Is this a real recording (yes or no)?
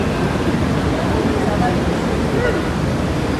yes